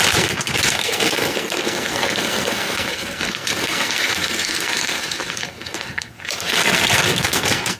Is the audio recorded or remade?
remade